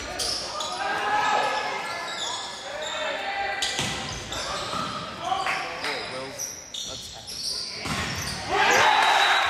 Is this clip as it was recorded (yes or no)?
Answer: yes